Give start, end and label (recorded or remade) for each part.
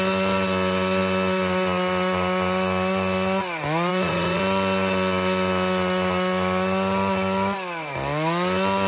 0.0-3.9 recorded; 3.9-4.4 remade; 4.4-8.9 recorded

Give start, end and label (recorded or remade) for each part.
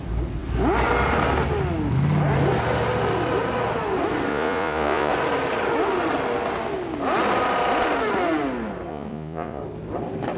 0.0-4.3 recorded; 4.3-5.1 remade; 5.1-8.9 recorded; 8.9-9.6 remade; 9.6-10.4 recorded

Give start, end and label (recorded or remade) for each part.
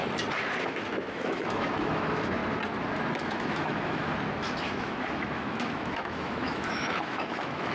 0.0-0.6 recorded; 0.6-2.4 remade; 2.4-3.1 recorded; 3.1-4.1 remade; 4.1-4.6 recorded; 4.6-7.7 remade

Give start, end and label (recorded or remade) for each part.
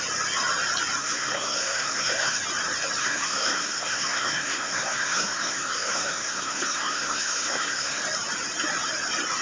0.0-1.0 recorded; 1.0-2.4 remade; 2.4-3.0 recorded; 3.0-8.0 remade; 8.0-9.4 recorded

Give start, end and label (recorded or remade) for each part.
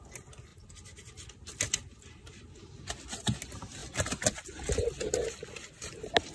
0.0-6.3 recorded